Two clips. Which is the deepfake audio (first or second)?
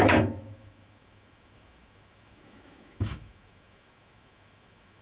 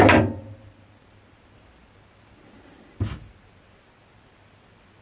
first